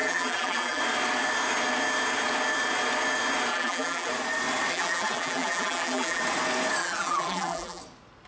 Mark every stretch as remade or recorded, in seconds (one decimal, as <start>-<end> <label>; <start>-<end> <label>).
0.0-0.8 remade; 0.8-3.5 recorded; 3.5-4.1 remade; 4.1-4.7 recorded; 4.7-6.2 remade; 6.2-6.8 recorded; 6.8-7.8 remade; 7.8-8.3 recorded